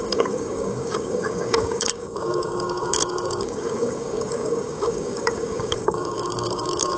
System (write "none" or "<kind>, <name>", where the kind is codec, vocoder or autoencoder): codec, DAC